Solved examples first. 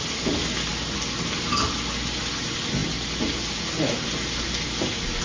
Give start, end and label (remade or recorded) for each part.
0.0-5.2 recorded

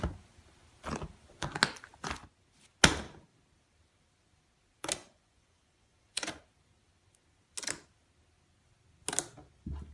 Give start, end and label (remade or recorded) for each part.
0.0-5.0 recorded; 5.0-6.4 remade; 6.4-9.9 recorded

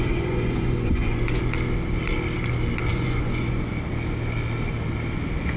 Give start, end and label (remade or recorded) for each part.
0.0-1.4 remade; 1.4-2.9 recorded; 2.9-3.7 remade; 3.7-5.6 recorded